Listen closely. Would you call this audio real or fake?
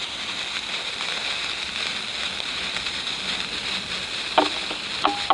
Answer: real